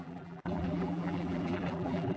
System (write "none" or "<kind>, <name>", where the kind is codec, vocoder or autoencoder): vocoder, BigVGAN v2